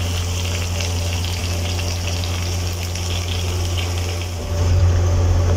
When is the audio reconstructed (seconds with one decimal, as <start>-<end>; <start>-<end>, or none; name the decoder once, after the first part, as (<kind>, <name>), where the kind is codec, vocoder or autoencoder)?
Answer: none